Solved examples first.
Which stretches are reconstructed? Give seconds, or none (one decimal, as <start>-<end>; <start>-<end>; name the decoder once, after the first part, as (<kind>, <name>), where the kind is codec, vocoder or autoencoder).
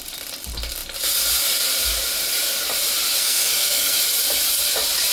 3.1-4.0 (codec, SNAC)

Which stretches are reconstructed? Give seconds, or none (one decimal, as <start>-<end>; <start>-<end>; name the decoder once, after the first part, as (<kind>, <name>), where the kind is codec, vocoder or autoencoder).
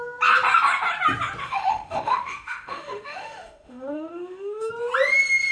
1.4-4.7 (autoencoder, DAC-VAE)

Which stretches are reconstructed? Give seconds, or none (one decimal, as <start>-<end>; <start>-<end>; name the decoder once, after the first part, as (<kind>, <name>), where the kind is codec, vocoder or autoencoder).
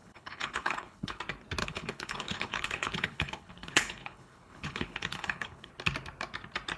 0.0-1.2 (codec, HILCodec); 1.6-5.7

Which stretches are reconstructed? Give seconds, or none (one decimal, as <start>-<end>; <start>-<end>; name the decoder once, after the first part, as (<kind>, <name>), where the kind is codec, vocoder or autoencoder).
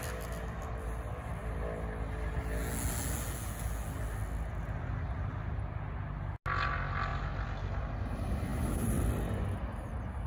none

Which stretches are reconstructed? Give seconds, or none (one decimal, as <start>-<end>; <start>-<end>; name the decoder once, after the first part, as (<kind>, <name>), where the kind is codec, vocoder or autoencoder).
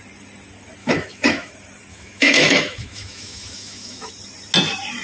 0.8-1.5 (autoencoder, DAC-VAE); 1.9-4.1